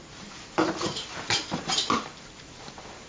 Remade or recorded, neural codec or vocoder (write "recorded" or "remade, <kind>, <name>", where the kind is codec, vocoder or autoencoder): remade, vocoder, BigVGAN v2